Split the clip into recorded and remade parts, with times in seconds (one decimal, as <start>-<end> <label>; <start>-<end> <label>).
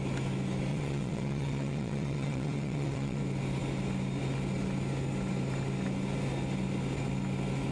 0.0-0.7 recorded; 0.7-3.2 remade; 3.2-7.7 recorded